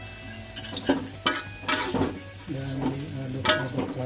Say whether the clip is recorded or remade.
recorded